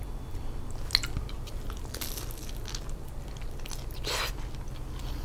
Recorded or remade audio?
recorded